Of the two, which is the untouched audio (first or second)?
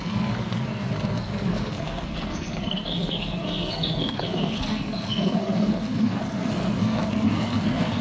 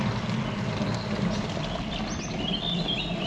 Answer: second